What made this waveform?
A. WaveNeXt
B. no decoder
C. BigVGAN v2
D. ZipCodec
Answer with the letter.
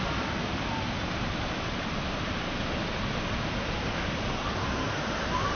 B